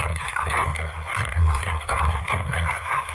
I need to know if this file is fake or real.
fake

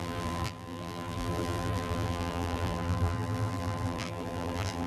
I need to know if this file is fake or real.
fake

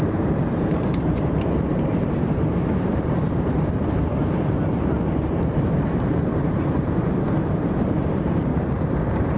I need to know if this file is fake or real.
fake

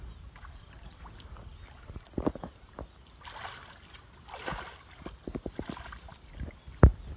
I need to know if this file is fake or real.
real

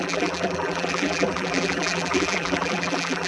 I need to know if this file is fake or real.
fake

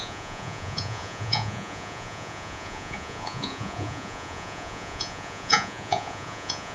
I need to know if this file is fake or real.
fake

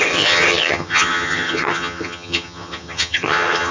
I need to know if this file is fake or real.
fake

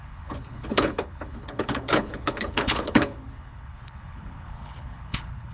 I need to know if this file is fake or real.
fake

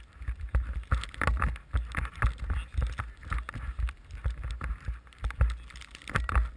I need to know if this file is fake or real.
real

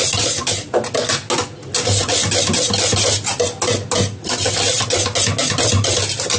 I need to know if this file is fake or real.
real